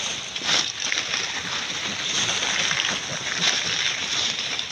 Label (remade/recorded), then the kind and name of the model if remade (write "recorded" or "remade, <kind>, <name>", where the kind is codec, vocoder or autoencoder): recorded